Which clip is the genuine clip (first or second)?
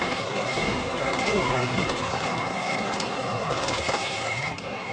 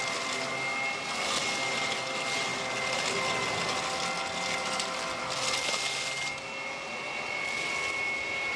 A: second